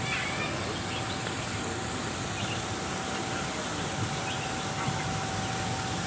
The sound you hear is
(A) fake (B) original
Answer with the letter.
B